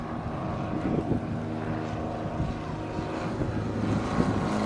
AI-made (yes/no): no